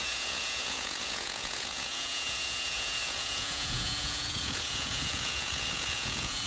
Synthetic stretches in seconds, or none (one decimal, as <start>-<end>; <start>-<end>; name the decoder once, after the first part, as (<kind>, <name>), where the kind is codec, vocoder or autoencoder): 0.0-6.5 (vocoder, Vocos)